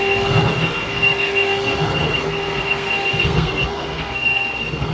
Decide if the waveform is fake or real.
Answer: fake